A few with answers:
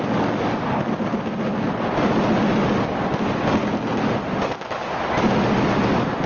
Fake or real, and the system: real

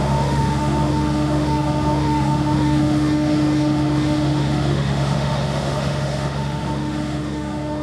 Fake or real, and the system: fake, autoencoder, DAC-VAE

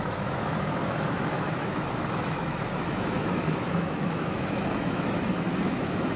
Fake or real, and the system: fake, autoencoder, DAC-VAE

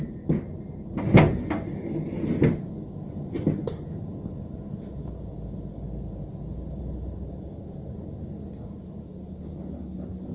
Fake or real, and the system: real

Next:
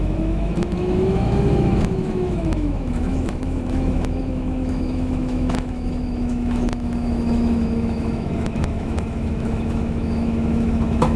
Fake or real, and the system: fake, autoencoder, DAC-VAE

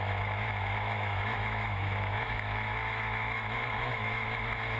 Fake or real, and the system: fake, autoencoder, DAC-VAE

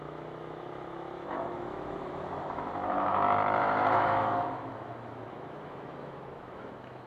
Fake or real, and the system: fake, autoencoder, DAC-VAE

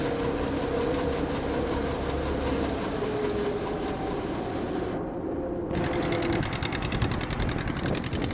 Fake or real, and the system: real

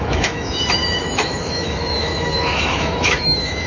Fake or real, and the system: fake, autoencoder, DAC-VAE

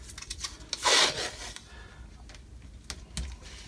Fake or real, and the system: real